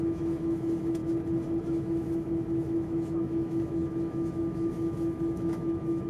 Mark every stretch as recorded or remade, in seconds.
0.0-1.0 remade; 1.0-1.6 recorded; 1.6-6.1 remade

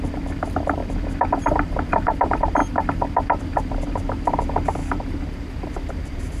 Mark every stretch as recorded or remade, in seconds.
0.0-0.8 remade; 0.8-1.7 recorded; 1.7-2.6 remade; 2.6-3.4 recorded; 3.4-4.8 remade; 4.8-5.9 recorded; 5.9-6.4 remade

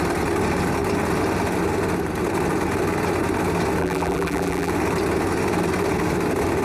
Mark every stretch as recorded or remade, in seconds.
0.0-3.8 recorded; 3.8-4.7 remade; 4.7-6.6 recorded

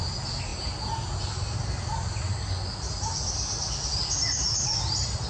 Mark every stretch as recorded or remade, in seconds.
0.0-5.3 recorded

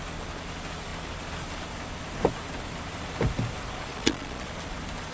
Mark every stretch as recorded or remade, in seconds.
0.0-3.9 recorded; 3.9-4.5 remade; 4.5-5.1 recorded